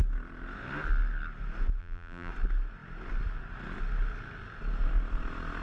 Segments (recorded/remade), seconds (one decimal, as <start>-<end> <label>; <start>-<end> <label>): 0.0-1.8 recorded; 1.8-2.3 remade; 2.3-5.6 recorded